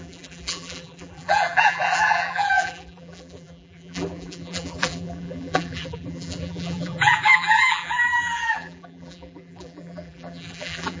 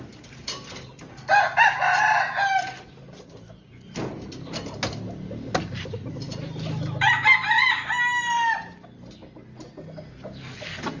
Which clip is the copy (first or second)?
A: first